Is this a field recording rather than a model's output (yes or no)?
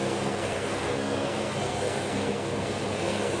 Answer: no